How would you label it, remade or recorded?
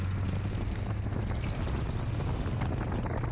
recorded